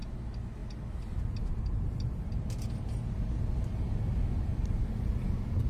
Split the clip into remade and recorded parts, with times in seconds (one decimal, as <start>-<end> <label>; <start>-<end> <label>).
0.0-4.5 recorded; 4.5-5.2 remade; 5.2-5.7 recorded